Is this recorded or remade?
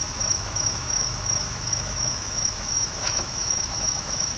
remade